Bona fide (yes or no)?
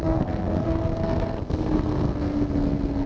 no